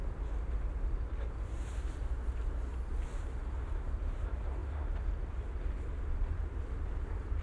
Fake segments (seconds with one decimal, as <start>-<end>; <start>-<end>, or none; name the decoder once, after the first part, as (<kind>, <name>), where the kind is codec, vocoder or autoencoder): none